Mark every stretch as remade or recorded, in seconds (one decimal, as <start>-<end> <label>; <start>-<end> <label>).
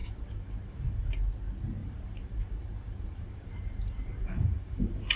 0.0-1.0 remade; 1.0-1.8 recorded; 1.8-5.2 remade